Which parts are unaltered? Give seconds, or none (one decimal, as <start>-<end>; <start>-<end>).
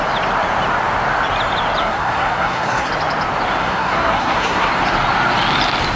0.0-1.8; 2.9-3.6; 4.7-6.0